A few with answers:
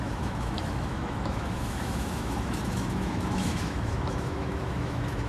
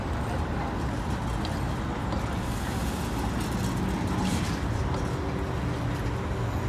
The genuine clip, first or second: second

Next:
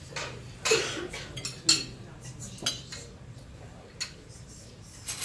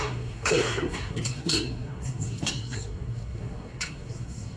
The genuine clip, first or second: first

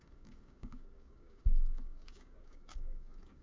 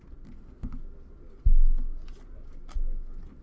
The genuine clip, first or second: second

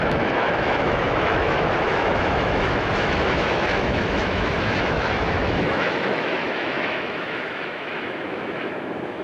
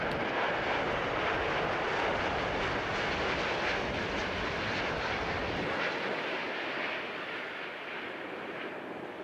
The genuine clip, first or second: second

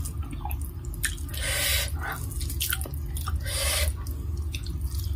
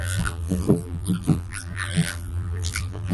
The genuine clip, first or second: first